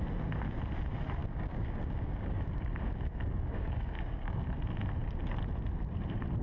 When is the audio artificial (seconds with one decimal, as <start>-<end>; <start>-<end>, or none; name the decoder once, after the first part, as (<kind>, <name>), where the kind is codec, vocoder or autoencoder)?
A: 1.2-4.4 (codec, DAC)